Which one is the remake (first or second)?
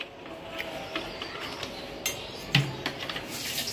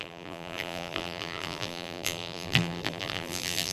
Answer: second